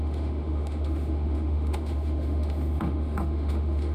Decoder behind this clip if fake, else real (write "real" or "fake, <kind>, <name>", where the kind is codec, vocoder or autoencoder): fake, autoencoder, DAC-VAE